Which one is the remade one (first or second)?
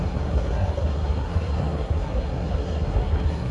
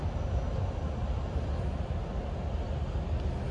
first